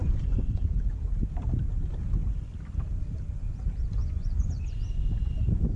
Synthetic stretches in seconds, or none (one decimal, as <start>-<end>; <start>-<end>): 0.0-0.8; 4.0-5.0